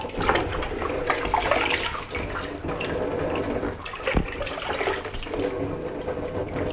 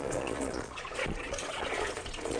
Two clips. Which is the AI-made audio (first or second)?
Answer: second